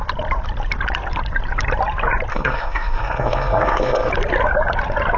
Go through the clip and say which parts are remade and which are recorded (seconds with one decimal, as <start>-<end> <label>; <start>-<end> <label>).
0.0-2.3 recorded; 2.3-4.1 remade; 4.1-5.2 recorded